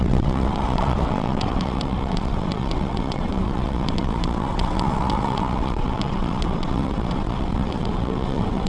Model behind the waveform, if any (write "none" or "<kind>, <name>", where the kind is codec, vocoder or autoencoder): vocoder, WaveNeXt